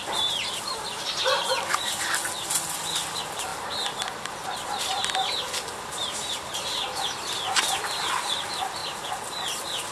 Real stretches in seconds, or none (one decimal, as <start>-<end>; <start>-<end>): 0.0-9.9